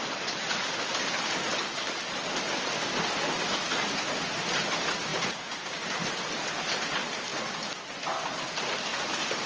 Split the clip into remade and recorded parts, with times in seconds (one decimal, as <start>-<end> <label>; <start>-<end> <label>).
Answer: 0.0-1.5 recorded; 1.5-2.3 remade; 2.3-9.5 recorded